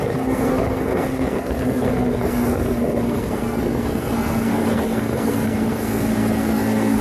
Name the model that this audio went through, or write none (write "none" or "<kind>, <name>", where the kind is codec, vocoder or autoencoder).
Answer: codec, SNAC